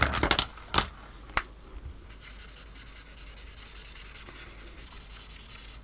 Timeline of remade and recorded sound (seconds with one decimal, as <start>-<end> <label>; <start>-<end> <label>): 0.0-5.8 recorded